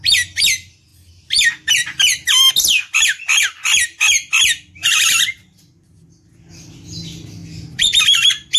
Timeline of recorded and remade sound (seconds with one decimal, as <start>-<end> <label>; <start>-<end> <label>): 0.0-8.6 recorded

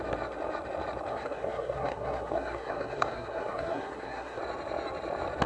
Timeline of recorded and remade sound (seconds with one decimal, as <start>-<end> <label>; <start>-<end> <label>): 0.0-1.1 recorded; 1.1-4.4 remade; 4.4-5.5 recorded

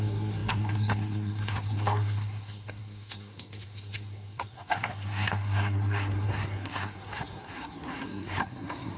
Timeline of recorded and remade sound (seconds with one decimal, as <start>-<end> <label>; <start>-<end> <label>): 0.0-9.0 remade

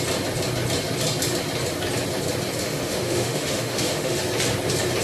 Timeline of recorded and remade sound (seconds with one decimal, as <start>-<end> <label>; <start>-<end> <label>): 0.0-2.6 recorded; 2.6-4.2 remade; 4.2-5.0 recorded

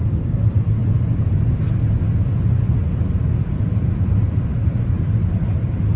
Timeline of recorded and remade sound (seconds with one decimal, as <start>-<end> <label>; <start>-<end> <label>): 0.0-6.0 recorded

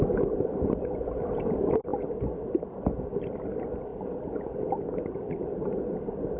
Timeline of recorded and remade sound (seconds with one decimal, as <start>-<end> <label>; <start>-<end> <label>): 0.0-6.4 recorded